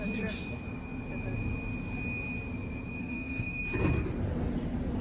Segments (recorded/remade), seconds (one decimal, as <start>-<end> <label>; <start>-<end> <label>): 0.0-3.0 recorded; 3.0-3.6 remade; 3.6-5.0 recorded